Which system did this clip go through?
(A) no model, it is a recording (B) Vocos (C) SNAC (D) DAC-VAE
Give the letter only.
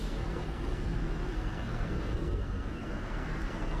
C